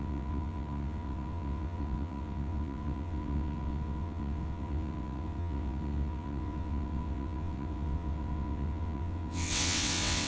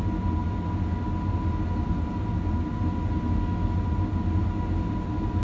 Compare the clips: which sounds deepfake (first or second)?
first